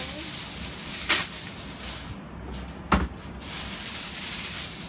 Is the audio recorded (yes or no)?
yes